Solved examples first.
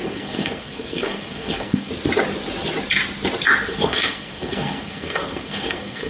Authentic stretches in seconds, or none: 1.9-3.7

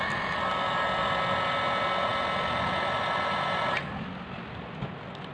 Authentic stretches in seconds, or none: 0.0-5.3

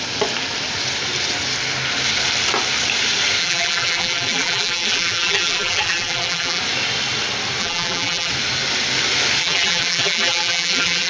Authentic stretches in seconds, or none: 0.0-3.4; 6.6-7.6; 8.3-9.4